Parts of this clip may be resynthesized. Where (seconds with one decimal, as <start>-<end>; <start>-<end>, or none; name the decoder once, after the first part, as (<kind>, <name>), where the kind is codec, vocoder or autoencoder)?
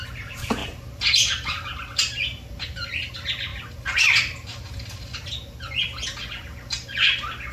none